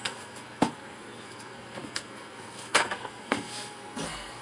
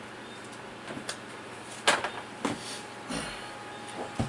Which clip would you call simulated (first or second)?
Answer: first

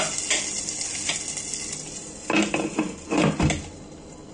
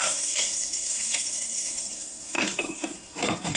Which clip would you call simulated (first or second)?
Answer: second